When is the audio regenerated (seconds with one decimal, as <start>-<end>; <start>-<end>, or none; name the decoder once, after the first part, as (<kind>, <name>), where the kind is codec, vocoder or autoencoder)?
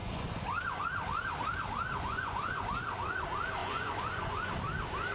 0.0-0.8 (vocoder, Vocos); 1.9-2.9; 3.6-4.5